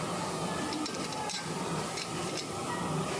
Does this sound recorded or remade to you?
recorded